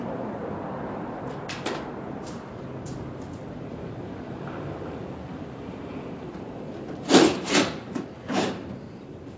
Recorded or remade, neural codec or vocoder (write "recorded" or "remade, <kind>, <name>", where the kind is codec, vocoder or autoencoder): remade, vocoder, BigVGAN v2